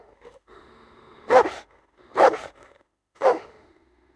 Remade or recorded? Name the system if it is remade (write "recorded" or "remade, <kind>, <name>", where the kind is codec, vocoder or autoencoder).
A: remade, autoencoder, DAC-VAE